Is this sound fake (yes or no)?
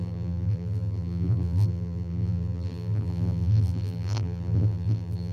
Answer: yes